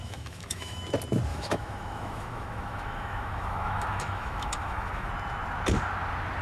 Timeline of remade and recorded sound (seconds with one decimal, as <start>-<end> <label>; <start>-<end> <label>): 0.0-0.8 remade; 0.8-1.3 recorded; 1.3-5.1 remade; 5.1-6.4 recorded